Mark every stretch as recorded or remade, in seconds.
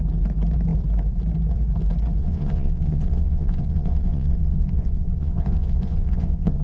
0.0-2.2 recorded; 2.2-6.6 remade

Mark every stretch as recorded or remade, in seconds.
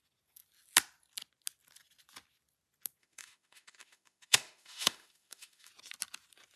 0.0-3.0 recorded; 3.0-5.7 remade; 5.7-6.6 recorded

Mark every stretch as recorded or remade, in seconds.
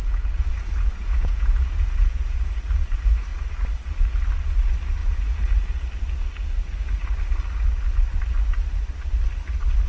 0.0-2.4 remade; 2.4-5.0 recorded; 5.0-5.9 remade; 5.9-9.9 recorded